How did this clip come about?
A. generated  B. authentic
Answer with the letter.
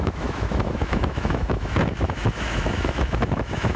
A